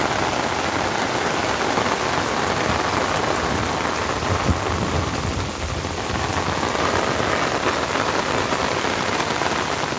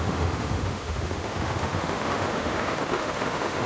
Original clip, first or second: first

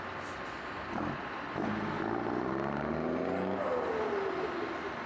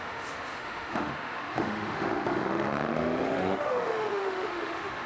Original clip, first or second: first